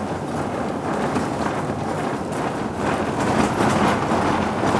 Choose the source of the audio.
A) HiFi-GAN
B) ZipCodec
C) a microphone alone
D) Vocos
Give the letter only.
C